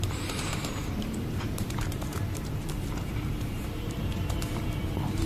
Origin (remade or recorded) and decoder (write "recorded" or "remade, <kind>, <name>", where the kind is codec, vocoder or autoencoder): remade, vocoder, BigVGAN v2